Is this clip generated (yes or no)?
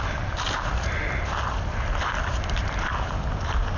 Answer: no